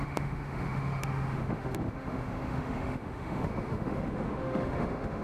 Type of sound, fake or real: fake